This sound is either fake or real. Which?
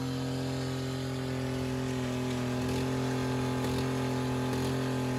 real